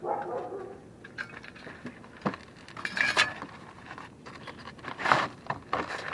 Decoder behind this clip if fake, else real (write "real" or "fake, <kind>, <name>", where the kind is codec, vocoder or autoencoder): real